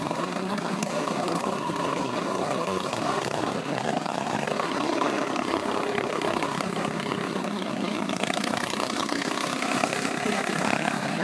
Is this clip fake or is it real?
fake